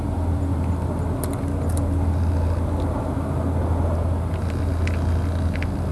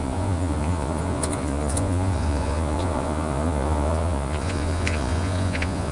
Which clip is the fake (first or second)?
second